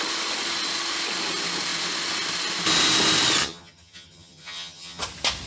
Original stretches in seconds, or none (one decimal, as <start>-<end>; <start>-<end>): 0.0-3.4; 5.0-5.5